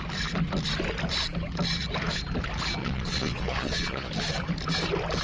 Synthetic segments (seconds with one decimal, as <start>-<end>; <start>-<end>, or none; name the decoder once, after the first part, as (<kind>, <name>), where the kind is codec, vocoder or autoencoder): 2.8-4.1 (vocoder, Vocos)